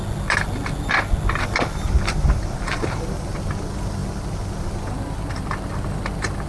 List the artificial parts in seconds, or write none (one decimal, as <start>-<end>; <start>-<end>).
none